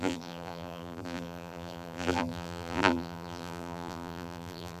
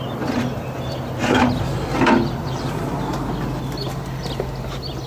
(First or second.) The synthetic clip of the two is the first